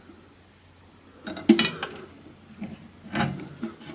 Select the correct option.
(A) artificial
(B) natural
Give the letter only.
B